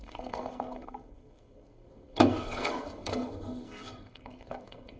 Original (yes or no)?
no